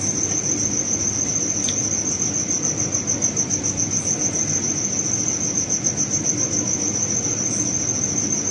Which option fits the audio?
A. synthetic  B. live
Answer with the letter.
B